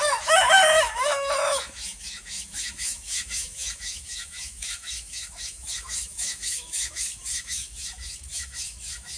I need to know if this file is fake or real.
fake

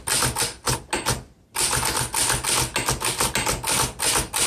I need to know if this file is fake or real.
real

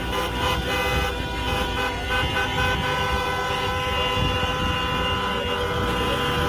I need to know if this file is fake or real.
real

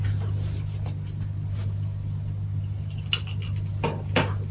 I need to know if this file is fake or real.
real